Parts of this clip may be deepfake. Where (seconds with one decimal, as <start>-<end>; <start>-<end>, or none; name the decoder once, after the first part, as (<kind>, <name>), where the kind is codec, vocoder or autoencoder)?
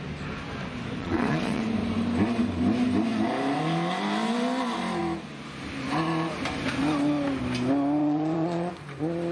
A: 1.0-1.6 (vocoder, Vocos); 8.0-8.7